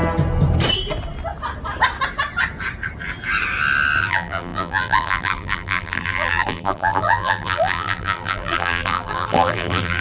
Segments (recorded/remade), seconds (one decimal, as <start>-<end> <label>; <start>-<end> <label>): 0.0-4.0 recorded; 4.0-10.0 remade